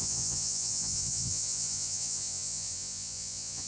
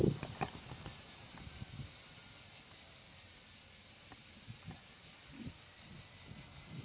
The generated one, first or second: first